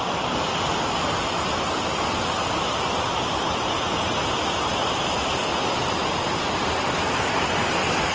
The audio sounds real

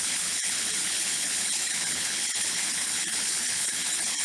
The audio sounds fake